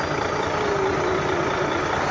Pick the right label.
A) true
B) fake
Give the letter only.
A